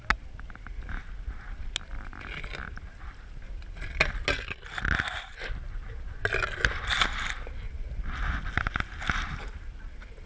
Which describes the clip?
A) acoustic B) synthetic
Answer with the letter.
A